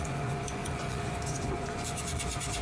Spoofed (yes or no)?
yes